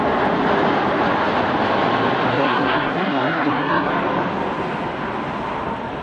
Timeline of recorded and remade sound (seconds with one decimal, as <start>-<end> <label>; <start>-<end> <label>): 0.0-2.3 recorded; 2.3-3.9 remade; 3.9-6.0 recorded